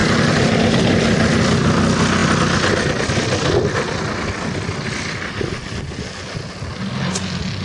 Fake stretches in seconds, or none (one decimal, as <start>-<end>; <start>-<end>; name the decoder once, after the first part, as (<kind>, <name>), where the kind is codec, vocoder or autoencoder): none